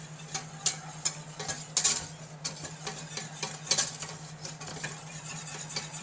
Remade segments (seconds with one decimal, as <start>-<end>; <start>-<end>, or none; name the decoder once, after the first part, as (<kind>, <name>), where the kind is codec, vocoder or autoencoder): none

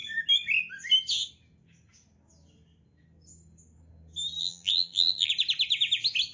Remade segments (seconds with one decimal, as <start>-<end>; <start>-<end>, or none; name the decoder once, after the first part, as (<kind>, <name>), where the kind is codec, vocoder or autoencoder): 4.4-5.3 (vocoder, BigVGAN v2)

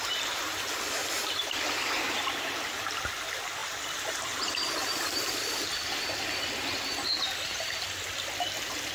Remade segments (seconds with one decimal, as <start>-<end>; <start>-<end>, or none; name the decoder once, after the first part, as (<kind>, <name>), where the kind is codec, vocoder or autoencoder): 1.0-1.6 (vocoder, BigVGAN v2)